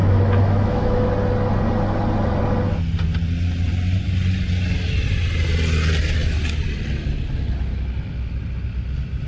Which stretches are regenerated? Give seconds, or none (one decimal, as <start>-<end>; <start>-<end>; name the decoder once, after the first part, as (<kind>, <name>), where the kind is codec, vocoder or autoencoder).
0.0-1.1 (autoencoder, DAC-VAE)

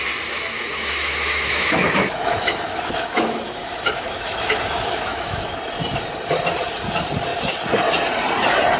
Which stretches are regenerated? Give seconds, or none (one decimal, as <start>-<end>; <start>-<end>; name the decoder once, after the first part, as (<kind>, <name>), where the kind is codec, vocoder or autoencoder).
0.5-5.6 (autoencoder, DAC-VAE)

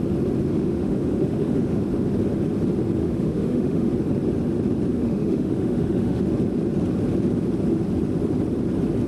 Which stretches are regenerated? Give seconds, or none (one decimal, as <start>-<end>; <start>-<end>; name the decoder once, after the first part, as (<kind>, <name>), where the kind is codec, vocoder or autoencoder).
0.5-1.8 (autoencoder, DAC-VAE); 3.0-3.9; 4.9-6.2

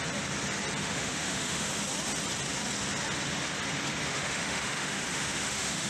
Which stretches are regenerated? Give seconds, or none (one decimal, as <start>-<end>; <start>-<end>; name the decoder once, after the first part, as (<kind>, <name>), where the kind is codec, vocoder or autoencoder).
0.8-1.7 (autoencoder, DAC-VAE); 4.0-5.9